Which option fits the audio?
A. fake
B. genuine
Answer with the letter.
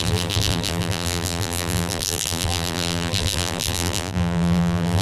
A